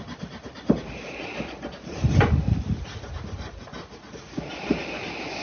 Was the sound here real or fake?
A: real